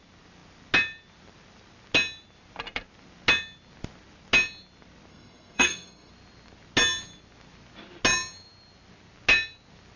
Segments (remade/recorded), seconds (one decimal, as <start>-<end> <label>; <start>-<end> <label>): 0.0-5.1 recorded; 5.1-6.1 remade; 6.1-10.0 recorded